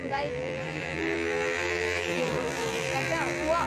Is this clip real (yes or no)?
no